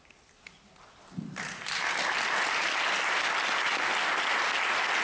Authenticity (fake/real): real